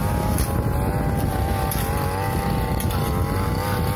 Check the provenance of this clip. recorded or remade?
recorded